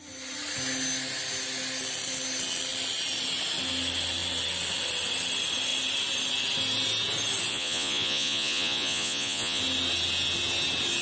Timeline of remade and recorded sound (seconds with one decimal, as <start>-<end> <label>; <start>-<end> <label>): 0.0-7.5 recorded; 7.5-9.6 remade; 9.6-11.0 recorded